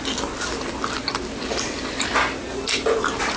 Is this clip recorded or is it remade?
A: recorded